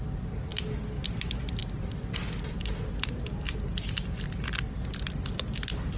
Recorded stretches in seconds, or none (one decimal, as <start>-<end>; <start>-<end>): 0.0-6.0